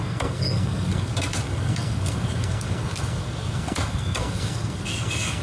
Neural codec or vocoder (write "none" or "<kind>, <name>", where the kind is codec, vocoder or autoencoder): codec, SNAC